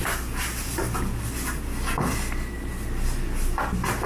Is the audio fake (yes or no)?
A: no